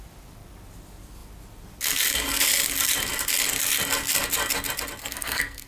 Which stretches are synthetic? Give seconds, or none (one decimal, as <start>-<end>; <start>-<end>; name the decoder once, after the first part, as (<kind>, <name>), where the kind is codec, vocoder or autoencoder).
5.0-5.7 (codec, SNAC)